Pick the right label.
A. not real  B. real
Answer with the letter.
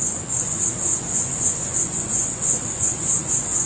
A